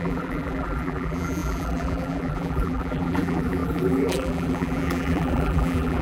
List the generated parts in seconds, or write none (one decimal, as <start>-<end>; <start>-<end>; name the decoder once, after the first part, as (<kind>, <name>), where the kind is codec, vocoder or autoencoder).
0.0-6.0 (vocoder, BigVGAN v2)